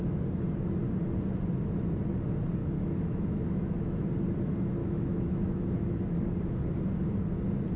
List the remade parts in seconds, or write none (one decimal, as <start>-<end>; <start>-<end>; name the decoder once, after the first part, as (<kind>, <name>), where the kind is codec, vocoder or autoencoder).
2.6-4.1 (autoencoder, DAC-VAE); 4.8-5.9